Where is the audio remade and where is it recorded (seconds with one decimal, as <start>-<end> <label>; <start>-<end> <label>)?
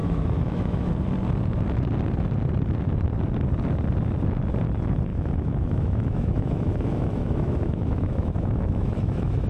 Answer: 0.0-0.9 remade; 0.9-5.1 recorded; 5.1-9.5 remade